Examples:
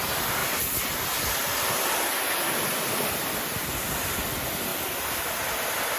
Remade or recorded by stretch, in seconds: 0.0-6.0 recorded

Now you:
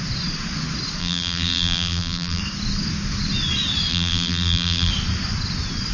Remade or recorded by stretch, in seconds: 0.0-1.0 recorded; 1.0-2.4 remade; 2.4-3.9 recorded; 3.9-4.9 remade; 4.9-5.9 recorded

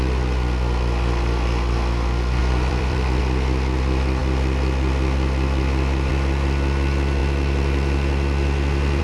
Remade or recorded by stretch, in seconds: 0.0-2.4 recorded; 2.4-3.2 remade; 3.2-9.0 recorded

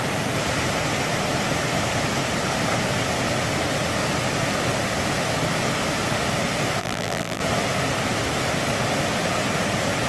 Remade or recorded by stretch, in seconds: 0.0-6.8 recorded; 6.8-7.4 remade; 7.4-10.1 recorded

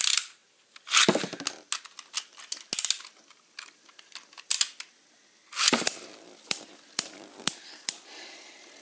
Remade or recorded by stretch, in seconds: 0.0-0.4 remade; 0.4-4.4 recorded; 4.4-8.8 remade